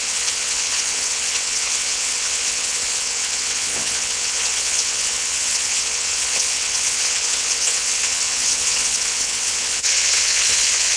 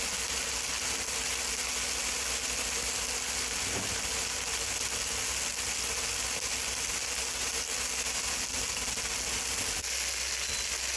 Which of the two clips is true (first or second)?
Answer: second